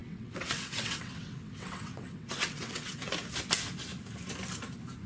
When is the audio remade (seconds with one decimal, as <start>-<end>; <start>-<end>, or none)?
0.0-3.1